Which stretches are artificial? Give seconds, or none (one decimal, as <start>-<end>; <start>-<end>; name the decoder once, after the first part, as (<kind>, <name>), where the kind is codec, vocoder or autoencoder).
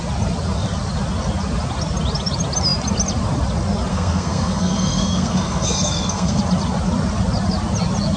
3.9-6.4 (codec, SNAC)